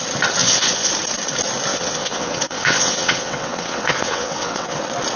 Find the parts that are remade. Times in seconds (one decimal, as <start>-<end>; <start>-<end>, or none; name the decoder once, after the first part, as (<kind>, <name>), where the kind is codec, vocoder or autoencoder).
0.4-0.9 (vocoder, WaveNeXt); 1.7-4.8